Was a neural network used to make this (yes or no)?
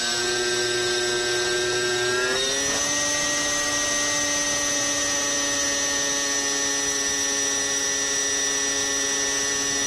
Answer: no